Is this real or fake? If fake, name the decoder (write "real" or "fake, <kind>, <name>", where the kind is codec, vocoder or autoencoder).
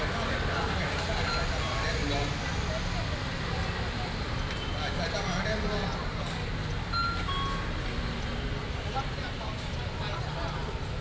real